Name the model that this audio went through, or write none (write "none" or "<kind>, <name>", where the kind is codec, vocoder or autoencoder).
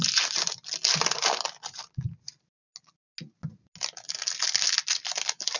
none